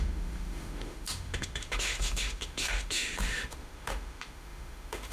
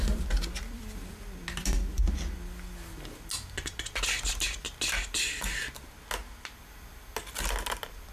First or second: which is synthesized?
first